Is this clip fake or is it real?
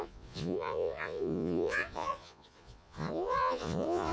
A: fake